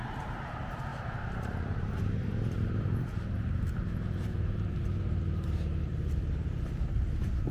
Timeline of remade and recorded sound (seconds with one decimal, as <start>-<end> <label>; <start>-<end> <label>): 0.0-7.5 remade